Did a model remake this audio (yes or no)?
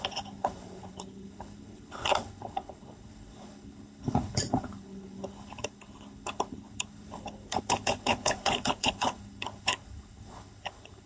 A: yes